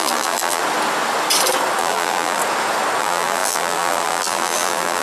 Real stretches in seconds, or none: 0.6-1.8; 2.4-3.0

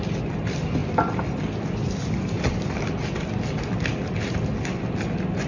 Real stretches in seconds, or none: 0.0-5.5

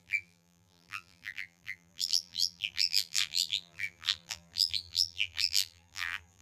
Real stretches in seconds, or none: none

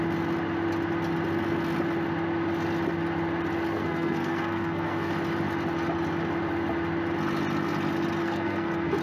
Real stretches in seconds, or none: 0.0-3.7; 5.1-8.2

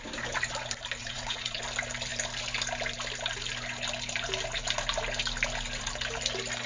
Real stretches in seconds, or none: 0.0-1.0; 1.6-6.7

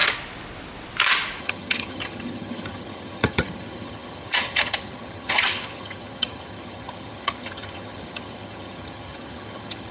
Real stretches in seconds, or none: 0.0-1.4